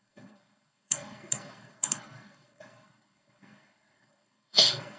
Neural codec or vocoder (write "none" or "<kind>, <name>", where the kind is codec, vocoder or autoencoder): codec, SNAC